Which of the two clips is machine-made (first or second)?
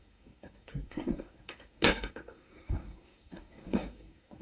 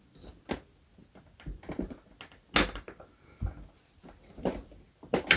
first